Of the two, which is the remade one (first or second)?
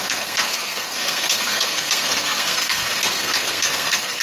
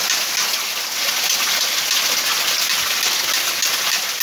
first